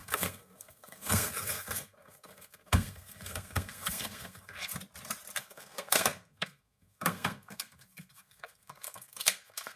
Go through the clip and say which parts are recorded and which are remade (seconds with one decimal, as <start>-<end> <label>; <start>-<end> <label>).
0.0-4.7 remade; 4.7-5.4 recorded; 5.4-9.8 remade